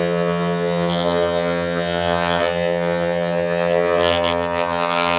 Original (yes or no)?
no